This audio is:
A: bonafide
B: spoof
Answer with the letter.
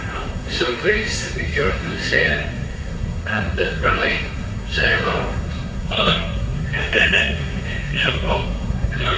B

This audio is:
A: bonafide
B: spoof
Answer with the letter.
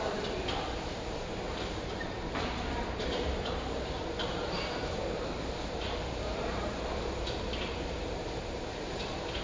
B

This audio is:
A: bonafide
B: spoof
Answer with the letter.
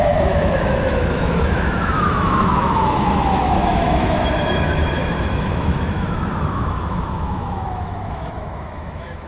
B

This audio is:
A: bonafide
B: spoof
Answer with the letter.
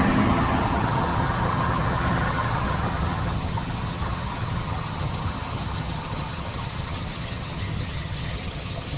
B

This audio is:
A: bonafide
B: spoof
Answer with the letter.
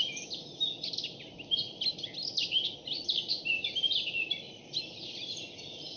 A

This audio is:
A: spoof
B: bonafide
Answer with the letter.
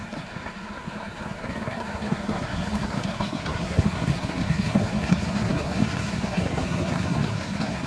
A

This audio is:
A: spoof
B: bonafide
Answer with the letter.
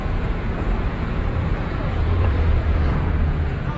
A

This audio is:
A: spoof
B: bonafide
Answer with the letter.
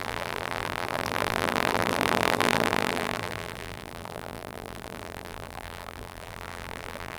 A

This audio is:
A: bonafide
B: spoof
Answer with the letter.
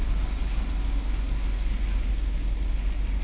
A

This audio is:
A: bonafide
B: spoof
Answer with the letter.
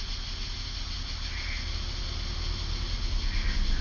A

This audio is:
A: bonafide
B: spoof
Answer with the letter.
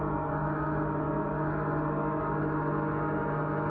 A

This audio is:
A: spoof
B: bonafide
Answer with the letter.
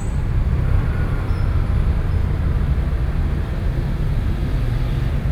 B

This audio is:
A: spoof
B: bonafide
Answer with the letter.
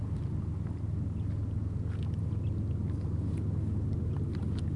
B